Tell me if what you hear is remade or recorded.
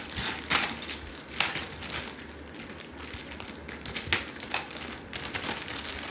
recorded